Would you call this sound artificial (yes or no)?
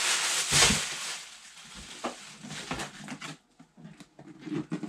no